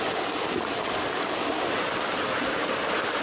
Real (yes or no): yes